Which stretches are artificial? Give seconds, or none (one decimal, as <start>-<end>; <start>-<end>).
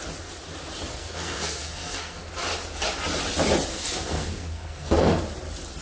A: 0.9-2.3; 3.7-5.2